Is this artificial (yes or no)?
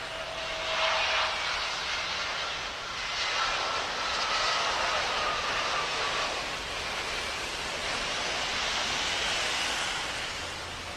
no